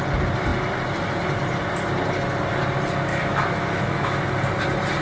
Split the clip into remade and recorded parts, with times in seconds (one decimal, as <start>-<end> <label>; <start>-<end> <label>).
0.0-3.1 recorded; 3.1-4.3 remade; 4.3-5.0 recorded